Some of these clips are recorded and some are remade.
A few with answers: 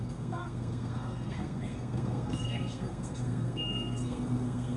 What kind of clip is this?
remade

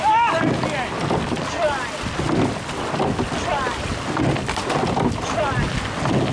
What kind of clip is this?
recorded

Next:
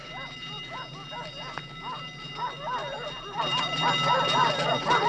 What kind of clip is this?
recorded